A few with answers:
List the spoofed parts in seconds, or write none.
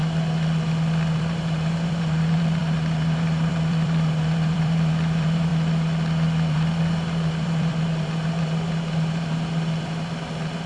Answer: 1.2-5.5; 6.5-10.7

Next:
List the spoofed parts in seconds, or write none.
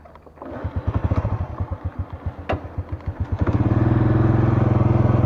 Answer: 1.0-2.2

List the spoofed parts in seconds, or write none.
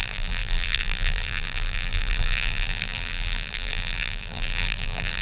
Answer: 0.0-5.2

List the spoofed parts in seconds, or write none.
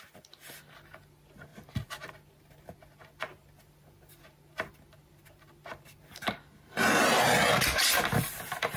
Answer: 1.5-2.1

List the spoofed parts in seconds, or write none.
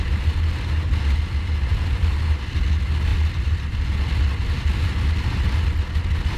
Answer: 1.7-2.6; 3.1-3.9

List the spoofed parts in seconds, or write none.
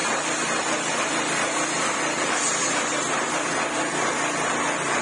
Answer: 0.0-5.0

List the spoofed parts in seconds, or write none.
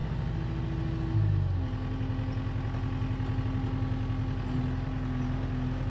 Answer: none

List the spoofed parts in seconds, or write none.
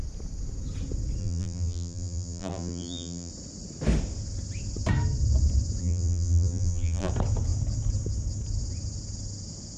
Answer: 1.2-3.3; 5.8-7.1